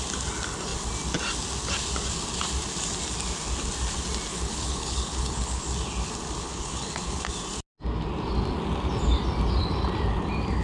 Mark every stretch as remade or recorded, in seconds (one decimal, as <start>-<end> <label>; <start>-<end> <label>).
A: 0.0-4.3 recorded; 4.3-5.6 remade; 5.6-6.4 recorded; 6.4-7.3 remade; 7.3-10.6 recorded